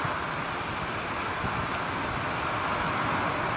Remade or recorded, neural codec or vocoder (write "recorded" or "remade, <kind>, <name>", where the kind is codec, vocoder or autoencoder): recorded